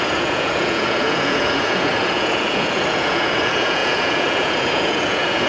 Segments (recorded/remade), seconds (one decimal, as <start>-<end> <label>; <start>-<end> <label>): 0.0-5.5 remade

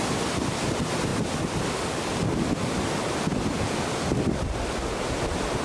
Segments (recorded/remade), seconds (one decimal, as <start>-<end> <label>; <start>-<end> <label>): 0.0-1.1 recorded; 1.1-1.7 remade; 1.7-3.3 recorded; 3.3-4.9 remade; 4.9-5.6 recorded

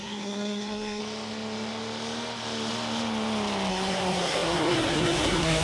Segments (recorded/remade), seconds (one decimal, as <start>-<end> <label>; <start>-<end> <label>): 0.0-1.0 remade; 1.0-3.7 recorded; 3.7-5.6 remade

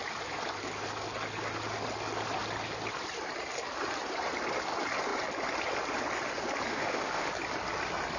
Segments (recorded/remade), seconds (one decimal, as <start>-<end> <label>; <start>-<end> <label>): 0.0-6.7 recorded; 6.7-7.3 remade; 7.3-8.2 recorded

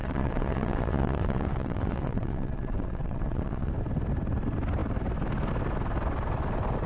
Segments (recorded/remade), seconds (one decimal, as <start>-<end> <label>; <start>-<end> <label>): 0.0-3.7 remade; 3.7-6.9 recorded

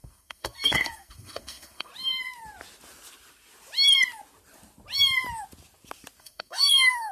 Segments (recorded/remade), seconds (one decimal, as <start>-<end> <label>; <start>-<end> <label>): 0.0-1.9 remade; 1.9-6.2 recorded; 6.2-7.1 remade

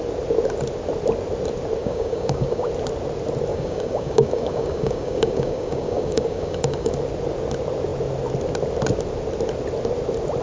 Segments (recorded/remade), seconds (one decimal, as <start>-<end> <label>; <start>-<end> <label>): 0.0-1.8 recorded; 1.8-2.7 remade; 2.7-3.5 recorded; 3.5-6.9 remade; 6.9-10.4 recorded

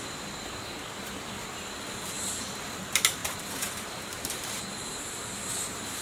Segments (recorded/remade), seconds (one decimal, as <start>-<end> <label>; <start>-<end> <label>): 0.0-3.2 recorded; 3.2-6.0 remade